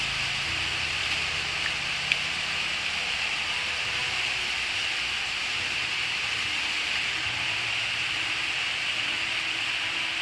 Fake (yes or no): yes